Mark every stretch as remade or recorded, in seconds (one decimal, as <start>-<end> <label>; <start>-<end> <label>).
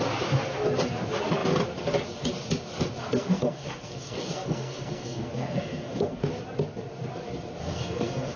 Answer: 0.0-3.0 recorded; 3.0-6.2 remade; 6.2-7.6 recorded; 7.6-8.4 remade